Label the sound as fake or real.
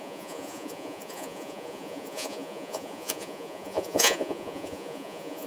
fake